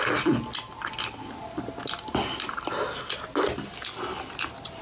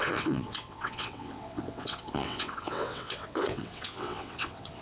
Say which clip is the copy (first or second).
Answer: second